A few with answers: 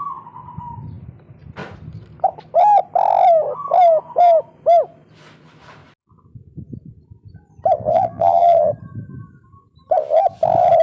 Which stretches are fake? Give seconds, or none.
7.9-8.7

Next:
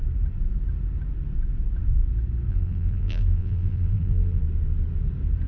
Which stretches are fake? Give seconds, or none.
2.5-4.4

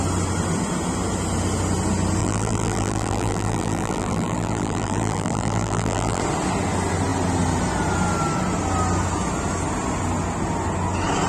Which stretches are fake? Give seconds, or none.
2.2-6.2

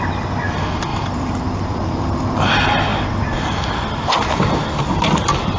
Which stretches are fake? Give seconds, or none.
0.9-2.2

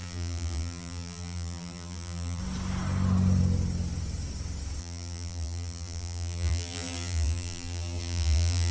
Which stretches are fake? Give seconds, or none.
0.0-2.4; 4.8-8.7

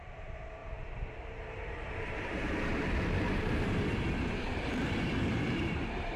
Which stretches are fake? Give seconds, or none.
0.0-6.2